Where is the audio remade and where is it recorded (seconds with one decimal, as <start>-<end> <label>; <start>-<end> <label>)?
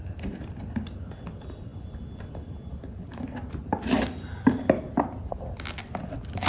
0.0-6.5 recorded